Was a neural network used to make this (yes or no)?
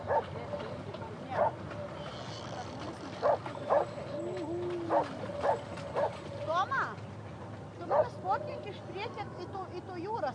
no